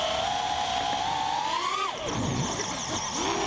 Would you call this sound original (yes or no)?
yes